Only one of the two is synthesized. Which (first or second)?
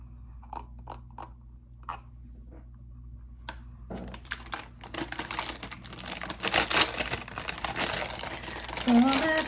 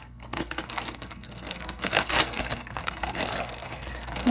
second